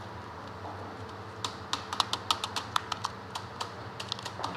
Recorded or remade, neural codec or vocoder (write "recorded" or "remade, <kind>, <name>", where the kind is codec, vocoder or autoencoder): recorded